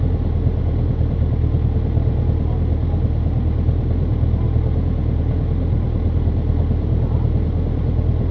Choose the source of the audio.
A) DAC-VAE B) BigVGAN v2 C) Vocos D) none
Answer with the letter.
D